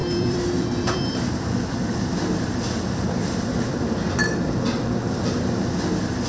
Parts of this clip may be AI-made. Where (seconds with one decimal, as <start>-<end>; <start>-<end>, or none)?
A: 0.0-3.8; 4.2-5.2